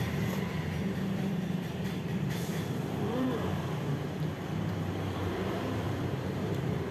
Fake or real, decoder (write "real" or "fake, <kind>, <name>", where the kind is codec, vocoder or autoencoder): fake, vocoder, BigVGAN v2